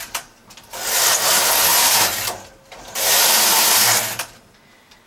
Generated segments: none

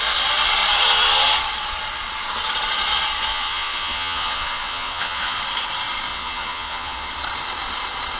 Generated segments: 3.3-5.4; 6.1-7.1

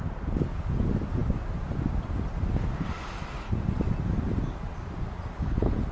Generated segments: 5.3-5.9